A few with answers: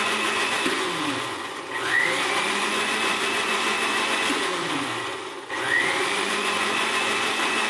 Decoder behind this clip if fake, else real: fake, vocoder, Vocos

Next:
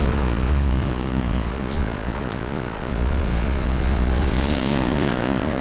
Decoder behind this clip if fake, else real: fake, vocoder, Vocos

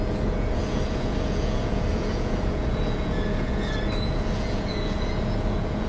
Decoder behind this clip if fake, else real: fake, vocoder, Vocos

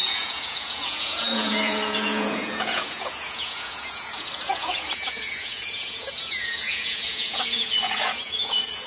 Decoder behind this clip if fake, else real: fake, vocoder, Vocos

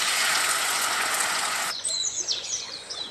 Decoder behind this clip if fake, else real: fake, vocoder, Vocos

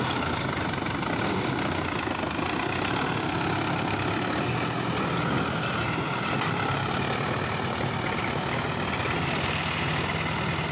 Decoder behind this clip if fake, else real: real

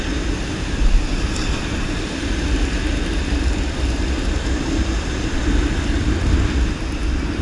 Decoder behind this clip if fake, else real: real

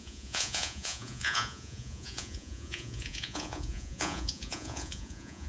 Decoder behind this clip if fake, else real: fake, vocoder, Vocos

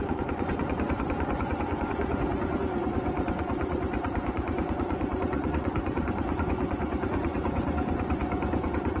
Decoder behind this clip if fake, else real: fake, vocoder, Vocos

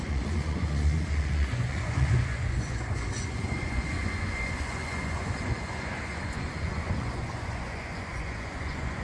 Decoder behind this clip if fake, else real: fake, vocoder, Vocos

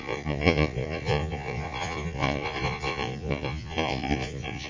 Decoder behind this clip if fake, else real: fake, vocoder, Vocos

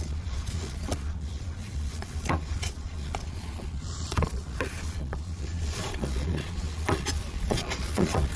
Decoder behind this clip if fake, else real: fake, vocoder, Vocos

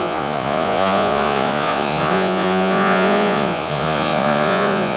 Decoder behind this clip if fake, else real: fake, vocoder, Vocos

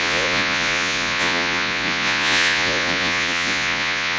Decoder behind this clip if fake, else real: fake, vocoder, Vocos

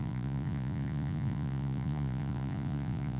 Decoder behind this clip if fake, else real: fake, vocoder, Vocos